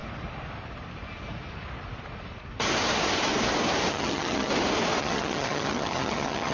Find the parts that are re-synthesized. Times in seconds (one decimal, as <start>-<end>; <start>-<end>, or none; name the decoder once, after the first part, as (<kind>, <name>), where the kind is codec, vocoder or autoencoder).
3.9-4.5 (vocoder, HiFi-GAN); 5.0-6.5